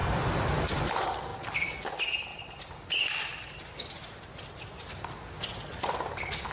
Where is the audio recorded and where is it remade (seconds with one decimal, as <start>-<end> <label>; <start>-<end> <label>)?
0.0-2.3 recorded; 2.3-2.9 remade; 2.9-6.5 recorded